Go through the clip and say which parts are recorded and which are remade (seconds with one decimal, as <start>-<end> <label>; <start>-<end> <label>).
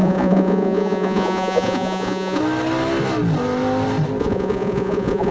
0.0-2.4 remade; 2.4-4.2 recorded; 4.2-5.3 remade